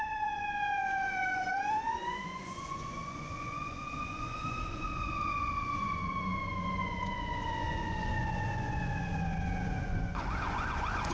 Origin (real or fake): fake